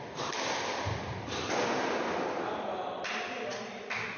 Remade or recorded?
recorded